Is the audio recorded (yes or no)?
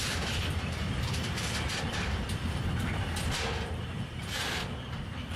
no